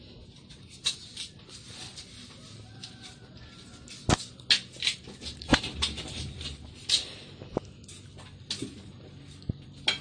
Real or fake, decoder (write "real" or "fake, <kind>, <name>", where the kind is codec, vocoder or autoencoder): real